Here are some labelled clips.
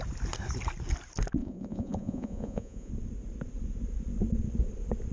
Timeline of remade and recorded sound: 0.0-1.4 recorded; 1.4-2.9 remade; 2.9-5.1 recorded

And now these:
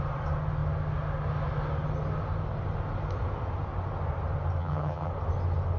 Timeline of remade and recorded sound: 0.0-4.6 recorded; 4.6-5.1 remade; 5.1-5.8 recorded